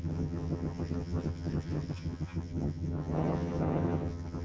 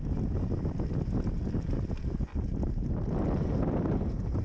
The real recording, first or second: second